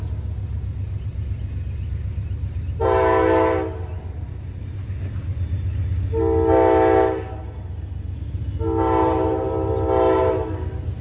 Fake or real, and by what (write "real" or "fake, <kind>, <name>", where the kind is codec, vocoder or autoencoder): real